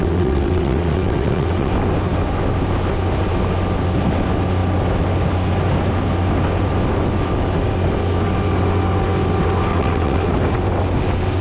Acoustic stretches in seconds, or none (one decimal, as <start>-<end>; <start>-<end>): 1.7-9.7; 10.3-11.4